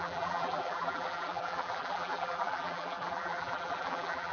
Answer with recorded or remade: remade